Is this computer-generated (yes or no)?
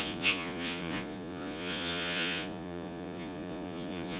yes